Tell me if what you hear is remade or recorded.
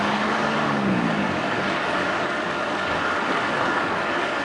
remade